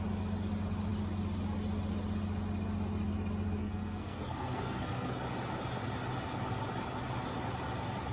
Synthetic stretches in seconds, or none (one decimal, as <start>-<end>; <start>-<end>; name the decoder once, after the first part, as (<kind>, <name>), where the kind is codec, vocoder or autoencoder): 3.6-5.2 (codec, SNAC)